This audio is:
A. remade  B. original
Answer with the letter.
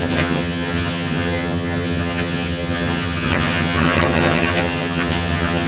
A